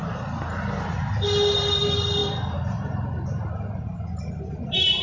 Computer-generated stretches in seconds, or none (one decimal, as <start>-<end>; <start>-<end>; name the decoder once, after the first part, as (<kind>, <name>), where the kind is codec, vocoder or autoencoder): none